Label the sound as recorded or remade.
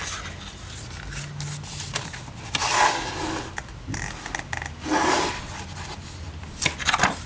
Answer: recorded